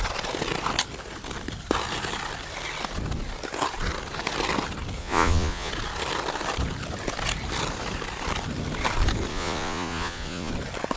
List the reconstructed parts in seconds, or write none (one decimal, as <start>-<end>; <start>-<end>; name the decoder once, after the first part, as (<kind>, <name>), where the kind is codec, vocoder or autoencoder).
5.0-5.7 (vocoder, Vocos); 9.3-10.5